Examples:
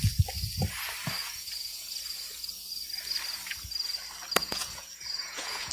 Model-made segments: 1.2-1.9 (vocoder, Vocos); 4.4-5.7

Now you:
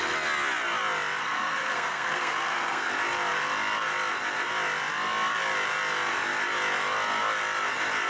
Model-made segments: 1.2-2.9 (codec, SNAC)

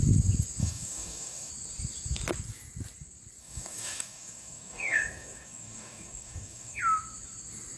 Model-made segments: 0.6-1.5 (codec, DAC); 3.4-6.8

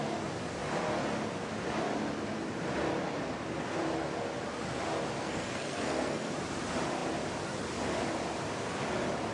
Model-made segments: 5.2-6.3 (codec, SNAC)

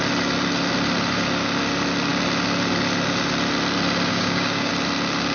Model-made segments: 4.1-4.7 (codec, DAC)

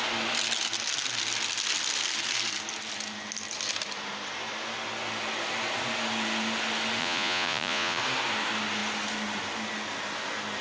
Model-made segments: 7.0-8.0 (vocoder, Vocos)

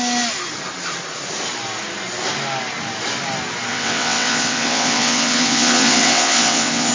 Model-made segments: 3.7-6.9 (vocoder, WaveNeXt)

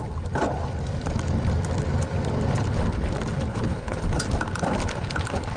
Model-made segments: 3.5-4.0 (codec, HILCodec)